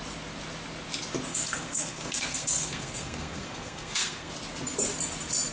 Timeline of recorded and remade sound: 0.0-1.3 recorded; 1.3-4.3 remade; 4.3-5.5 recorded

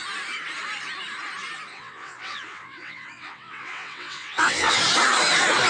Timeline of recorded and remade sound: 0.0-1.7 recorded; 1.7-4.8 remade; 4.8-5.7 recorded

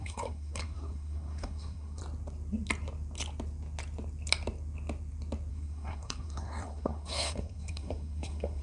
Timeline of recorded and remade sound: 0.0-2.0 remade; 2.0-5.5 recorded; 5.5-8.6 remade

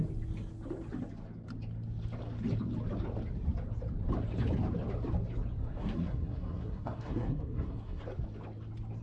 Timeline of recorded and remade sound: 0.0-5.6 recorded; 5.6-8.0 remade; 8.0-9.0 recorded

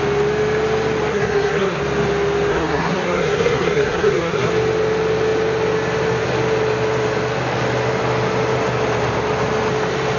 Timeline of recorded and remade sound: 0.0-1.1 recorded; 1.1-1.8 remade; 1.8-2.5 recorded; 2.5-4.5 remade; 4.5-10.2 recorded

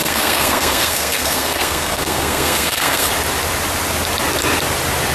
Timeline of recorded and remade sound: 0.0-3.1 remade; 3.1-5.1 recorded